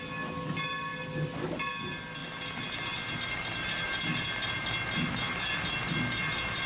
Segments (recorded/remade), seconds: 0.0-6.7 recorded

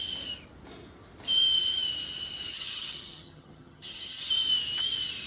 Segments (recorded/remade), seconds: 0.0-2.5 recorded; 2.5-4.3 remade; 4.3-5.3 recorded

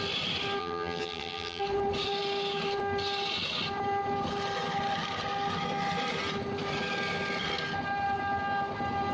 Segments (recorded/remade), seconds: 0.0-0.6 recorded; 0.6-1.6 remade; 1.6-9.1 recorded

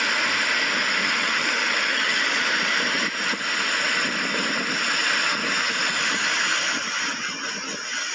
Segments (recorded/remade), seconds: 0.0-1.0 recorded; 1.0-2.2 remade; 2.2-8.1 recorded